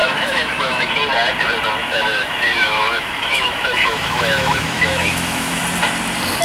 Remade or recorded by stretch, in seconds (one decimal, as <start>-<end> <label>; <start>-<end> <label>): 0.0-0.9 remade; 0.9-1.8 recorded; 1.8-5.6 remade; 5.6-6.4 recorded